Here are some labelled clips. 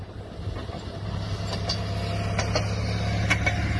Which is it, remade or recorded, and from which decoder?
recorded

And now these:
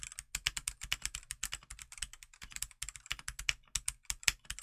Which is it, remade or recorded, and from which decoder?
recorded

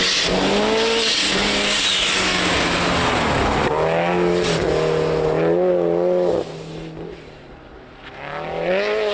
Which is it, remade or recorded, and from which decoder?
recorded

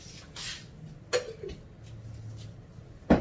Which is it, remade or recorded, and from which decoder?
recorded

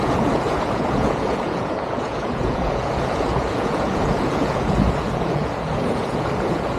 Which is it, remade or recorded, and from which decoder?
remade, vocoder, Vocos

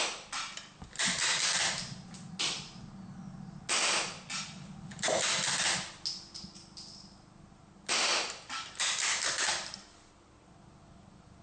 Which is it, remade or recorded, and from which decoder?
recorded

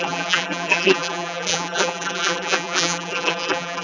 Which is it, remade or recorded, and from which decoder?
remade, vocoder, BigVGAN v2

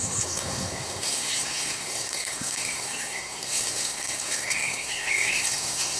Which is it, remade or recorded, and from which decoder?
remade, codec, SNAC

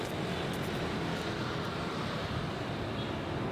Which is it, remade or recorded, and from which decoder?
recorded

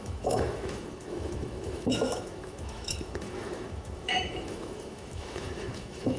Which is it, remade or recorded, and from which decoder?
remade, autoencoder, DAC-VAE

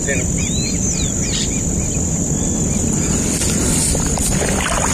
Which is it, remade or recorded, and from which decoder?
recorded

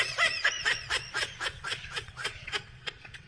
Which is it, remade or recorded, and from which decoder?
remade, vocoder, Vocos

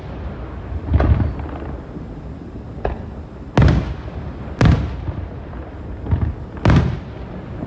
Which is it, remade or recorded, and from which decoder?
recorded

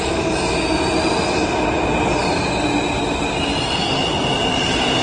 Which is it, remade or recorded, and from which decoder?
recorded